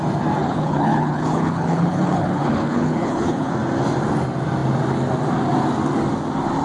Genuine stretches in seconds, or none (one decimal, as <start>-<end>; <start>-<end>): 0.0-0.4; 3.5-6.6